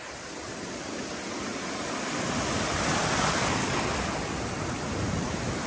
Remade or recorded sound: recorded